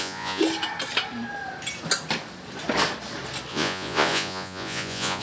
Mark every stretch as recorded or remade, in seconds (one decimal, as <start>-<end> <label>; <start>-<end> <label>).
0.0-0.4 remade; 0.4-3.5 recorded; 3.5-5.2 remade